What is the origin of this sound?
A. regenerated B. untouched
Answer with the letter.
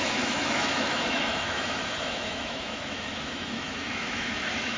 A